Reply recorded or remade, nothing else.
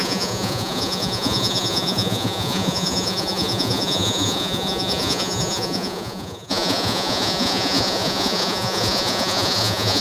remade